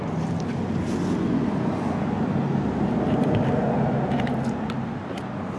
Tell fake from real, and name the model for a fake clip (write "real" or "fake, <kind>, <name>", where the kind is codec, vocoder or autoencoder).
real